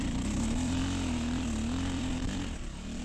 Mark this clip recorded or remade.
remade